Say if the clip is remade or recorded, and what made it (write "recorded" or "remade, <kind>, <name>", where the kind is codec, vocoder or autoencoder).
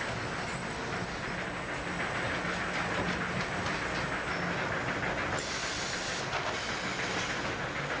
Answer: recorded